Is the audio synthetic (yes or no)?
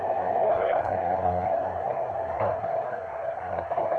yes